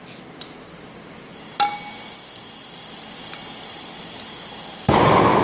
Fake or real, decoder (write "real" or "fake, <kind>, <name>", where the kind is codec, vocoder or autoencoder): real